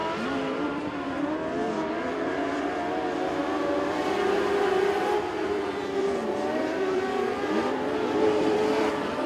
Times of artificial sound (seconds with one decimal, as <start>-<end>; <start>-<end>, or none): 0.0-2.8; 3.4-4.0; 6.0-8.9